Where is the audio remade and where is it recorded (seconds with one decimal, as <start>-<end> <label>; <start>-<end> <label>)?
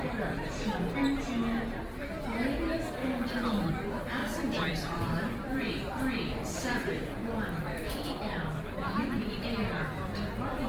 0.0-4.2 recorded; 4.2-9.1 remade; 9.1-10.7 recorded